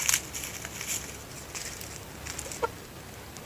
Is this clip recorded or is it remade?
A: recorded